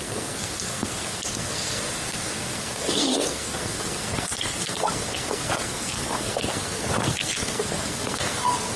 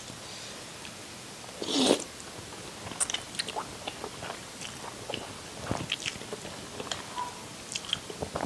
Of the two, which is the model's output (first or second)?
first